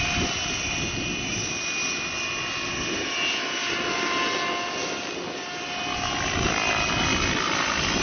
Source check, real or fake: real